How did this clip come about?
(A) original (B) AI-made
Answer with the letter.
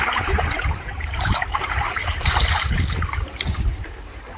B